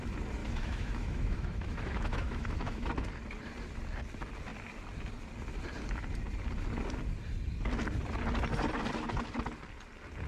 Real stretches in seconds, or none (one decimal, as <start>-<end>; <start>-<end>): 0.0-0.4; 2.9-10.3